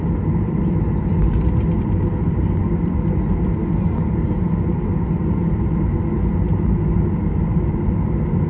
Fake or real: real